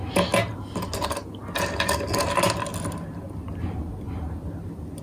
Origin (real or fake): real